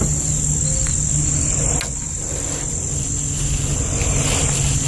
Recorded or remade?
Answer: recorded